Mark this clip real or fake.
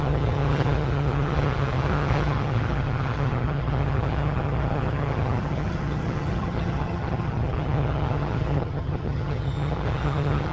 fake